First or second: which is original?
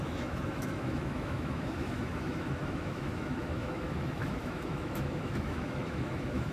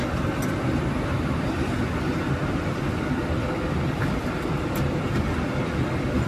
second